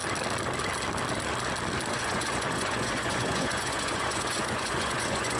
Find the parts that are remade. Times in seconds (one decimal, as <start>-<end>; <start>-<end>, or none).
1.9-5.4